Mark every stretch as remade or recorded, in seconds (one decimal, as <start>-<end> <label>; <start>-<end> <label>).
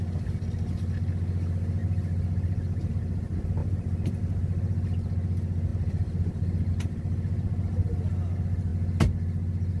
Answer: 0.0-3.6 recorded; 3.6-4.2 remade; 4.2-9.8 recorded